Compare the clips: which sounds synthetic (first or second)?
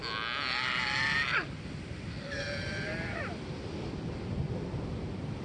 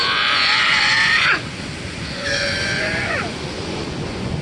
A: second